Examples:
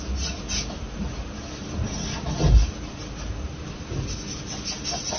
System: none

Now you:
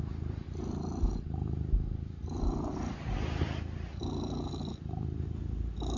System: none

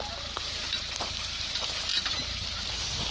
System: none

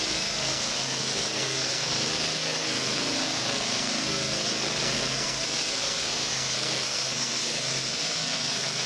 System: codec, SNAC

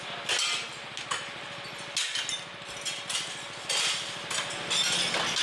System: none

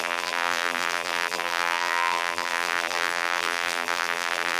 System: vocoder, BigVGAN v2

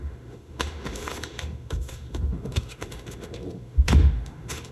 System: autoencoder, DAC-VAE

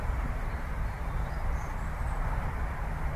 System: vocoder, BigVGAN v2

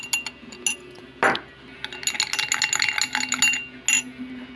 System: none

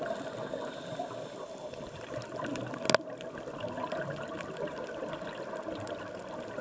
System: none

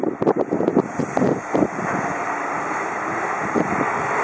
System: vocoder, BigVGAN v2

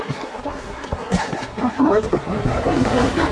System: codec, SNAC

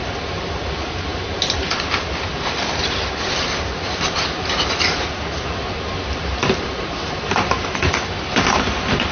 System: vocoder, BigVGAN v2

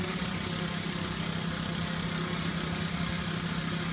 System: none